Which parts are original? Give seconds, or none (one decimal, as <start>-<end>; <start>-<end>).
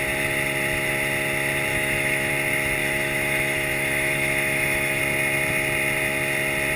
0.0-1.7; 2.3-2.8; 5.0-6.8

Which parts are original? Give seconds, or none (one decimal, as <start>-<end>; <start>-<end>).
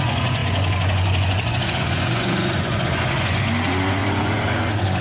none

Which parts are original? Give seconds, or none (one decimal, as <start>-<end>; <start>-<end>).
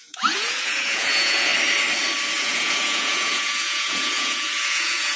1.5-2.4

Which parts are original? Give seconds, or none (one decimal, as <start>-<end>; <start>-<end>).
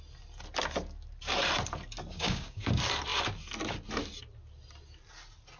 0.0-2.1; 2.7-5.6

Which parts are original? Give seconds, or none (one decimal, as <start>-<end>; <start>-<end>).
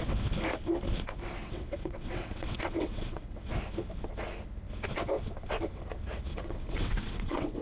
0.0-1.4; 3.5-6.3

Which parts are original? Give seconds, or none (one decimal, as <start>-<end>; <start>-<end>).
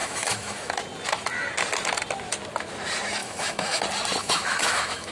0.7-3.2; 3.8-4.2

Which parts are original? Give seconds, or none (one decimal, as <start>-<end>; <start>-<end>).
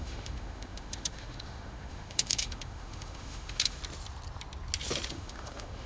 3.8-5.1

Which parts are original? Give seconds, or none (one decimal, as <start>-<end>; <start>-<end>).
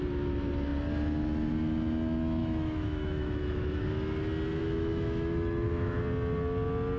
0.0-2.4; 3.8-4.6; 6.0-7.0